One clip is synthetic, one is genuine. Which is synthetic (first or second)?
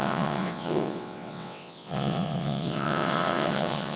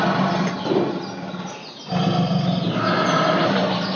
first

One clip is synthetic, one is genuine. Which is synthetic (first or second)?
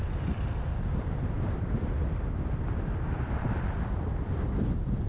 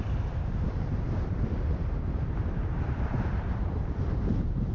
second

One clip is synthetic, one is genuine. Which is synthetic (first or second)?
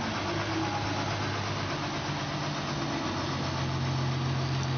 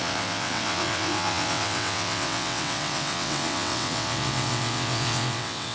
second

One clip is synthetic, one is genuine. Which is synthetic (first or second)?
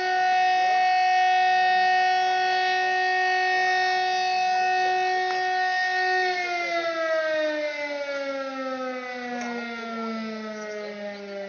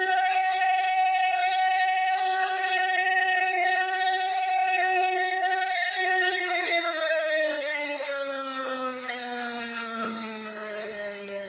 second